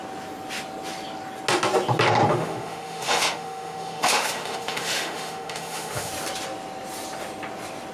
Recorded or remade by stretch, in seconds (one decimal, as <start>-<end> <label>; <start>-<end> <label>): 0.0-2.3 recorded; 2.3-6.1 remade; 6.1-7.9 recorded